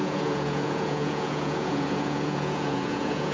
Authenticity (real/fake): fake